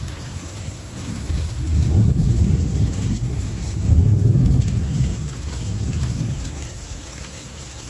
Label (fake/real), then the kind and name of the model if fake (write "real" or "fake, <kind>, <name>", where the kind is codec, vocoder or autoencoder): fake, codec, SNAC